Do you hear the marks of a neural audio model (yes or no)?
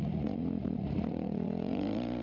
yes